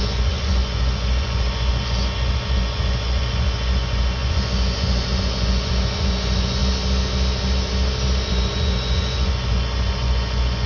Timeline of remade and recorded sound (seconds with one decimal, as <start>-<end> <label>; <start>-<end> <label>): 0.0-6.6 remade; 6.6-8.3 recorded; 8.3-10.7 remade